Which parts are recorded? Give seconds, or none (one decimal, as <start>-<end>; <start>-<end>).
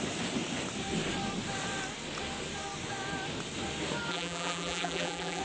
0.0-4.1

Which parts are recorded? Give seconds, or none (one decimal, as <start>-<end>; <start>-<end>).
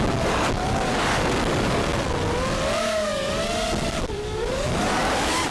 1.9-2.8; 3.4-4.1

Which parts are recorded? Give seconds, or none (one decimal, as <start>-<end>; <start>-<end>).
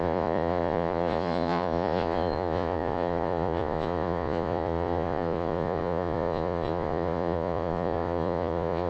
none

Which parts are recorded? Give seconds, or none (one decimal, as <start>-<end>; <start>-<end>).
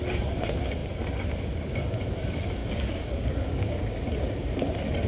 0.0-2.6; 4.0-5.1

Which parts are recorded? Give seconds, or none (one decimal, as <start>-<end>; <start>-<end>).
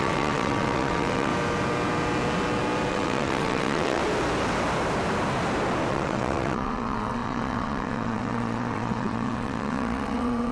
1.3-2.9; 4.0-5.9